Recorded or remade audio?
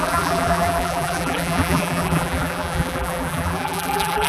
remade